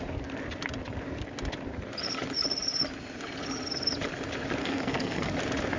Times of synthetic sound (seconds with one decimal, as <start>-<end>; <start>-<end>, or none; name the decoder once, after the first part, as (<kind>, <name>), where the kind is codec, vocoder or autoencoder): 4.6-5.3 (codec, SNAC)